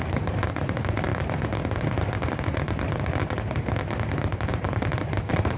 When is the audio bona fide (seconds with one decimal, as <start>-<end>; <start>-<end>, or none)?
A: 1.1-4.5